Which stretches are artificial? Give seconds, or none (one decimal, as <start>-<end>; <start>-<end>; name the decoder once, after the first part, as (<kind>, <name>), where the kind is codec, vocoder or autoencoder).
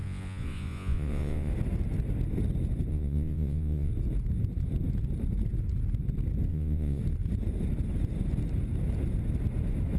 0.0-1.5 (vocoder, Vocos); 2.9-3.9; 6.5-7.0